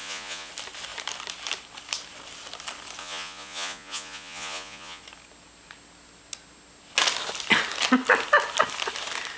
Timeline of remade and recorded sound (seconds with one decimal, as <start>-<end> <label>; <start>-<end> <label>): 0.0-0.5 remade; 0.5-3.0 recorded; 3.0-5.0 remade; 5.0-9.4 recorded